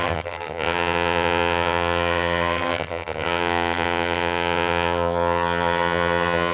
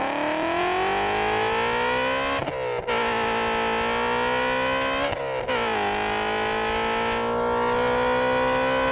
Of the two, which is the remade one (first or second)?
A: first